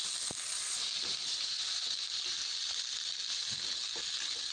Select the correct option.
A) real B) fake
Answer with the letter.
A